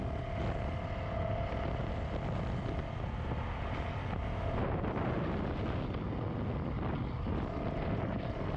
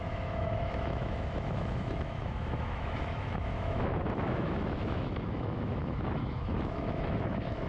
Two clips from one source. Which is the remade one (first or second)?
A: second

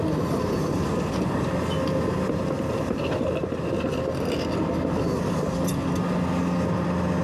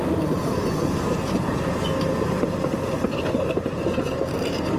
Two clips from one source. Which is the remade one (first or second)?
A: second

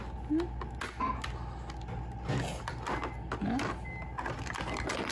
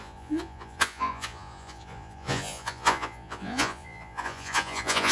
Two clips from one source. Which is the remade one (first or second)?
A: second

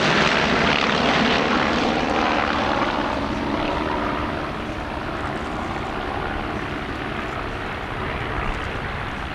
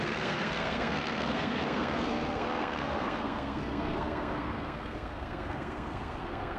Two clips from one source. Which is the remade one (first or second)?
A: second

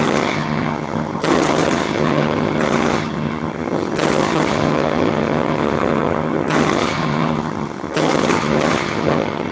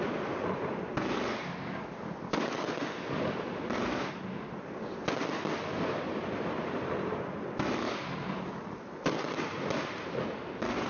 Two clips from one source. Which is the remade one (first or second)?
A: first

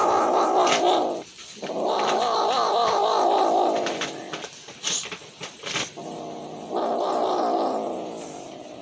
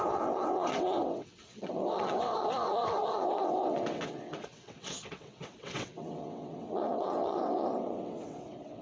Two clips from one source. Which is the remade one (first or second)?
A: second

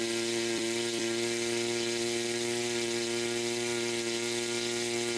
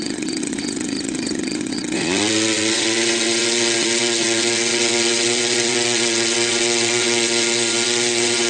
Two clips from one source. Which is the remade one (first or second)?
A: second